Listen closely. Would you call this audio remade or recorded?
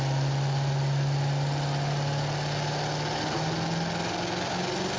recorded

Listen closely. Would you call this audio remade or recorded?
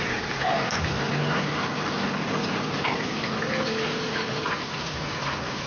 recorded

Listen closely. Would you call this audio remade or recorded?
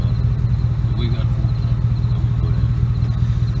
recorded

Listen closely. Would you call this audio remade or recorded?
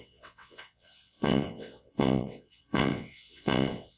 remade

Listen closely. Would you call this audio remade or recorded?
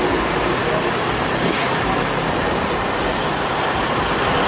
recorded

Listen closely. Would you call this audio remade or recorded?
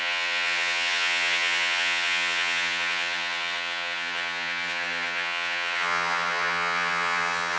remade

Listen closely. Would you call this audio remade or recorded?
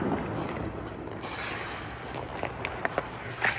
recorded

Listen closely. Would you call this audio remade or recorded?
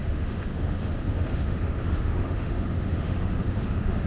remade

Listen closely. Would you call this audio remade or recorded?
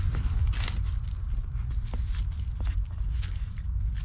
recorded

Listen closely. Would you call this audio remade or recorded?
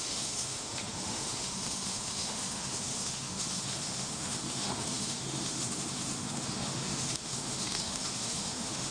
remade